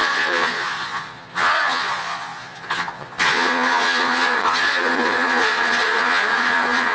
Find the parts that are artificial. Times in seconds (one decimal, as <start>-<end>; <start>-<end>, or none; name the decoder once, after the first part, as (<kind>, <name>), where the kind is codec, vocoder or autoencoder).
0.0-6.9 (vocoder, Vocos)